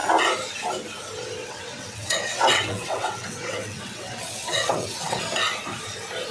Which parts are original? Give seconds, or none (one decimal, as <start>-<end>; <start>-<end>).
0.0-1.4; 5.2-6.3